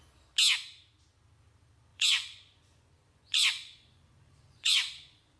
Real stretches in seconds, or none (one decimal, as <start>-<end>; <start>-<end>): 0.0-1.9